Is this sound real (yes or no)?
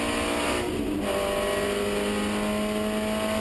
yes